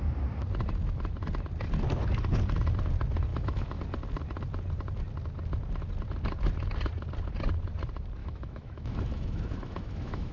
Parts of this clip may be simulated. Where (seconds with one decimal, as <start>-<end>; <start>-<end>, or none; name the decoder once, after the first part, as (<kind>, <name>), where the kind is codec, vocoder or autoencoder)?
3.3-3.8 (autoencoder, DAC-VAE); 8.2-10.3